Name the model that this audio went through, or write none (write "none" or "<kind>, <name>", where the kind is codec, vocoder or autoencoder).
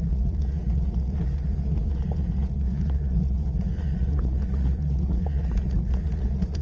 vocoder, Vocos